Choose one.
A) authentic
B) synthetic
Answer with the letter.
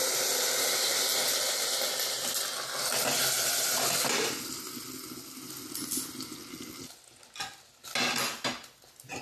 A